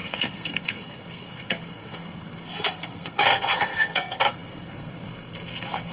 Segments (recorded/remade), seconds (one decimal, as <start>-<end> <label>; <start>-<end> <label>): 0.0-5.9 remade

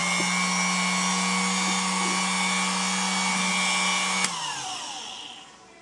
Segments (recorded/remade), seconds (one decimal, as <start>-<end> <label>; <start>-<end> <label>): 0.0-5.8 recorded

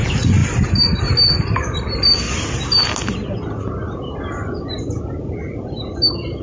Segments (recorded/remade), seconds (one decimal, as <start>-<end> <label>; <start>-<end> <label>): 0.0-6.4 recorded

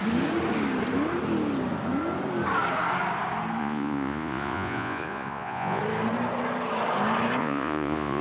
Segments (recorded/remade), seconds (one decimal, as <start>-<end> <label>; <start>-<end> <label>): 0.0-3.6 recorded; 3.6-5.8 remade; 5.8-7.4 recorded; 7.4-8.2 remade

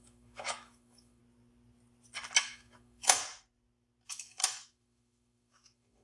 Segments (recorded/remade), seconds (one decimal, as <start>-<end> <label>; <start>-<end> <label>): 0.0-1.2 remade; 1.2-2.4 recorded; 2.4-3.2 remade; 3.2-4.1 recorded; 4.1-6.0 remade